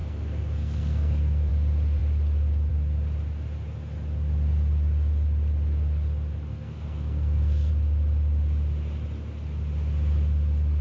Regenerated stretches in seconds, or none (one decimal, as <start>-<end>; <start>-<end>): 0.0-1.5; 6.5-7.7